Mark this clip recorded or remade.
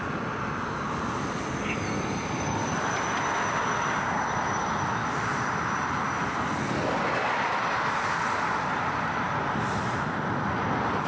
recorded